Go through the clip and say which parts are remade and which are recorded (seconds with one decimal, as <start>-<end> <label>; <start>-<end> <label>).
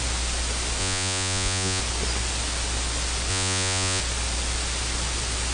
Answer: 0.0-0.8 recorded; 0.8-1.8 remade; 1.8-3.3 recorded; 3.3-4.0 remade; 4.0-5.5 recorded